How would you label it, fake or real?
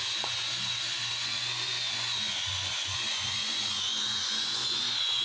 fake